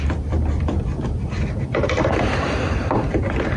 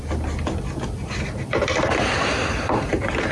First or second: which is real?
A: second